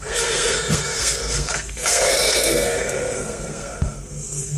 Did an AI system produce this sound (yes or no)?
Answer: yes